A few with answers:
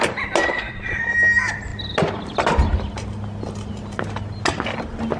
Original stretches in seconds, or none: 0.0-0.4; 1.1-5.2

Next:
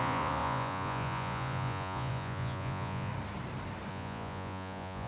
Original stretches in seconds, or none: 3.1-3.9

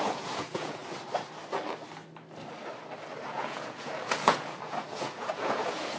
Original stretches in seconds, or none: 0.8-3.2

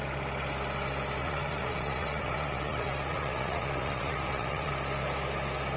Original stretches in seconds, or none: 0.0-1.2; 4.7-5.8

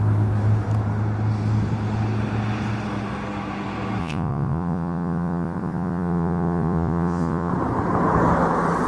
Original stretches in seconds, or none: 0.0-4.0; 7.5-8.9

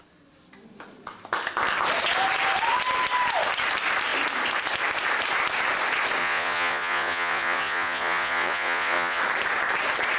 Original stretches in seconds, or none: 0.0-6.2; 9.2-10.2

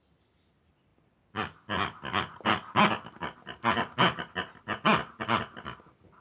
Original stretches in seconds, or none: 0.0-6.2